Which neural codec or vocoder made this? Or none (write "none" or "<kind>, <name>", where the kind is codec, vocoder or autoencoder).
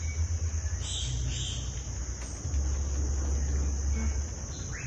none